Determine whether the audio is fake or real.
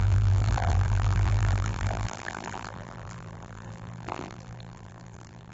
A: fake